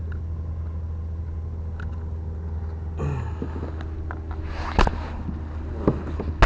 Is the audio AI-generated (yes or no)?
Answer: no